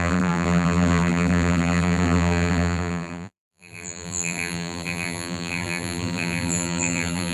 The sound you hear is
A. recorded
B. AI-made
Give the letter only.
B